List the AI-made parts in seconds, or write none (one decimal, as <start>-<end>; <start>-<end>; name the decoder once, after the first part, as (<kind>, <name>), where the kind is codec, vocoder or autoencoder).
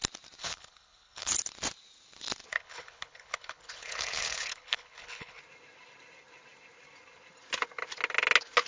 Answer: 0.4-1.3 (codec, HILCodec); 2.5-5.4